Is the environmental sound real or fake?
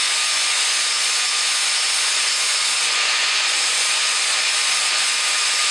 fake